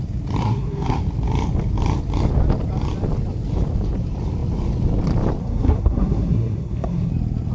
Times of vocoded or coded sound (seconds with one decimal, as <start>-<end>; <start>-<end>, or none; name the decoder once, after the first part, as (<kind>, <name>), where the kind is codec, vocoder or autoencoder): 0.4-1.0 (codec, SNAC); 5.4-7.1